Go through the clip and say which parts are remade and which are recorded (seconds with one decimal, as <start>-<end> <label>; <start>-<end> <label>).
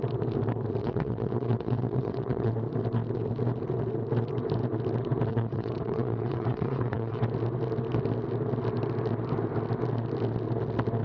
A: 0.0-0.8 recorded; 0.8-2.5 remade; 2.5-5.3 recorded; 5.3-7.2 remade; 7.2-11.0 recorded